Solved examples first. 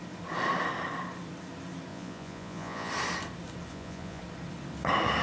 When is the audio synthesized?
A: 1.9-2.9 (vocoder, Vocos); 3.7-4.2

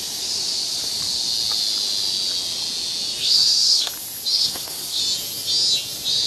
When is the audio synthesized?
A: 3.2-3.9 (codec, SNAC); 4.3-5.0

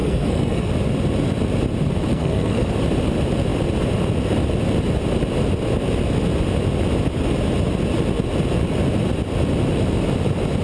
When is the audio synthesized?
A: 0.0-0.7 (codec, SNAC); 2.1-2.7

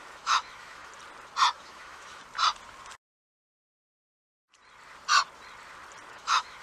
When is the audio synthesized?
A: 0.0-0.9 (autoencoder, DAC-VAE); 1.6-2.2; 6.1-6.6

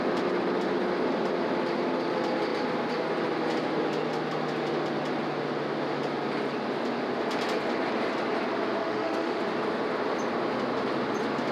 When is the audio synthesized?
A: 8.8-9.4 (autoencoder, DAC-VAE)